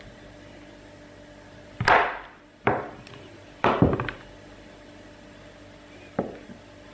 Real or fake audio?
fake